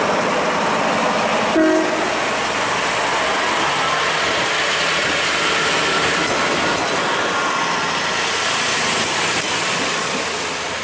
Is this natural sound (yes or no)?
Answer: yes